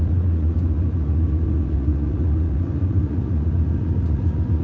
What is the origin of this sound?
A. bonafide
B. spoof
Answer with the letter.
B